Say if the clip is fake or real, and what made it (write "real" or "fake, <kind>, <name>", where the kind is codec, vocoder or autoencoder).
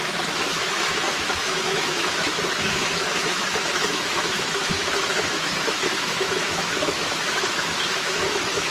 fake, autoencoder, DAC-VAE